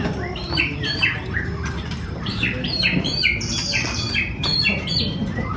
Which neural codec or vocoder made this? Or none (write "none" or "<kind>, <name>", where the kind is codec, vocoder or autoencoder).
vocoder, BigVGAN v2